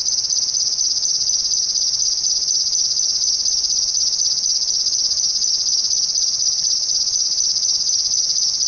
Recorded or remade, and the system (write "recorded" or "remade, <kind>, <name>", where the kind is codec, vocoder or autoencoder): recorded